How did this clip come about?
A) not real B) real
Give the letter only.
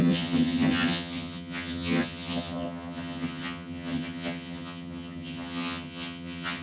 A